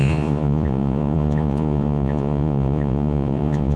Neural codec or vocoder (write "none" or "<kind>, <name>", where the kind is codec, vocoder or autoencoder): vocoder, Vocos